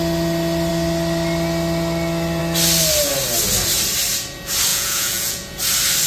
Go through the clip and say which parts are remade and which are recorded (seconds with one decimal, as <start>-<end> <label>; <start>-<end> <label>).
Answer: 0.0-4.7 recorded; 4.7-5.6 remade; 5.6-6.1 recorded